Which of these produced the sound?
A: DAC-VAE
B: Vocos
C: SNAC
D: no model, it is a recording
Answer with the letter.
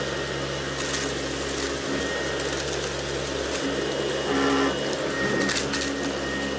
D